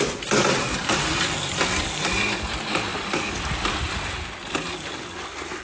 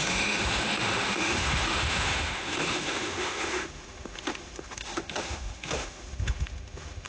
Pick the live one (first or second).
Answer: first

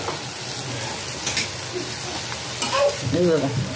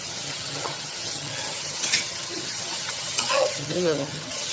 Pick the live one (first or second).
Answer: first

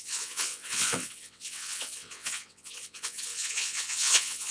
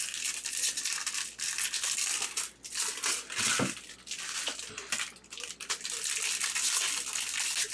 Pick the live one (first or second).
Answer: second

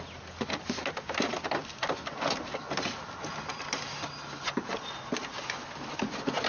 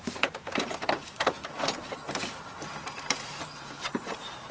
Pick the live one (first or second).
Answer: first